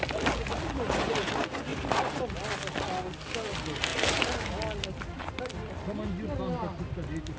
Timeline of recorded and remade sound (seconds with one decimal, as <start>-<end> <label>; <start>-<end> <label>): 0.0-7.4 recorded